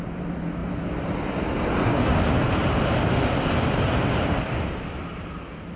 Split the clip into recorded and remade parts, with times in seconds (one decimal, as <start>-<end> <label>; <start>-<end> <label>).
0.0-5.8 recorded